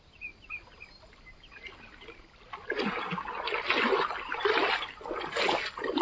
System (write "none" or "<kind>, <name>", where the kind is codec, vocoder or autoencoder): none